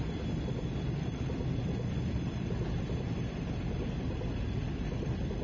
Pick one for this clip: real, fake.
real